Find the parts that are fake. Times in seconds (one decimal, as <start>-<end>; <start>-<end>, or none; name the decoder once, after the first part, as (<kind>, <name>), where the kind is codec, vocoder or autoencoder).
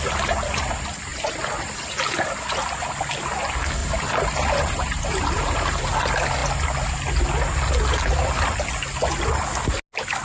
1.1-1.7 (vocoder, BigVGAN v2); 3.8-5.8